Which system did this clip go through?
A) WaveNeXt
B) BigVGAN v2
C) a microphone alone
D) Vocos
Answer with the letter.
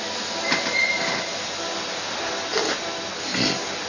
C